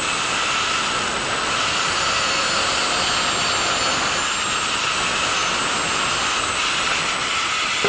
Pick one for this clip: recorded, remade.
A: recorded